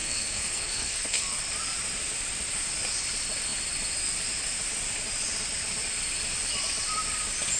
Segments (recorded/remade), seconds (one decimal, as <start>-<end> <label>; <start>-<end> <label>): 0.0-1.4 remade; 1.4-7.6 recorded

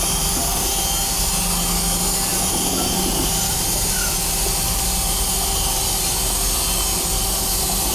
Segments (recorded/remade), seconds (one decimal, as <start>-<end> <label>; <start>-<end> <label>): 0.0-7.9 recorded

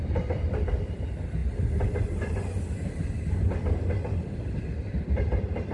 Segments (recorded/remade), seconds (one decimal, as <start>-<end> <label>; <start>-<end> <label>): 0.0-5.7 recorded

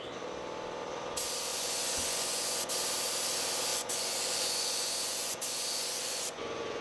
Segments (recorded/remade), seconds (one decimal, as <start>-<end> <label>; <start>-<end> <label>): 0.0-1.5 recorded; 1.5-2.7 remade; 2.7-3.7 recorded; 3.7-6.8 remade